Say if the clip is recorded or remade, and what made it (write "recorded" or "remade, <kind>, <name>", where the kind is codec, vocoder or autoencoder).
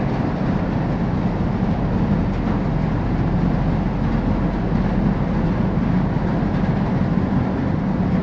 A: recorded